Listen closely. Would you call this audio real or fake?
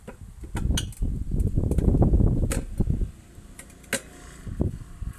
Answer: real